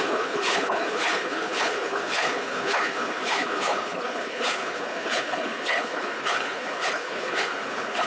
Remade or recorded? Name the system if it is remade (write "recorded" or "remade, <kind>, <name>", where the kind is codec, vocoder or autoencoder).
remade, codec, HILCodec